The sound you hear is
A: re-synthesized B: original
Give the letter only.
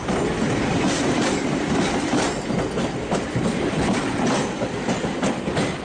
B